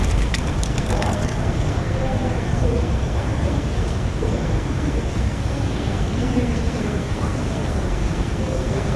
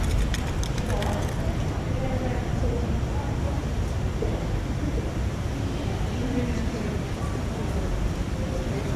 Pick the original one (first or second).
second